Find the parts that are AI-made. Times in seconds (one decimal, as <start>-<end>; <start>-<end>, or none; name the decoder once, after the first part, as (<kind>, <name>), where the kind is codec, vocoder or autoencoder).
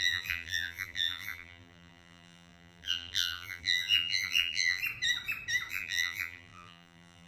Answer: 0.0-4.8 (vocoder, BigVGAN v2); 5.7-7.3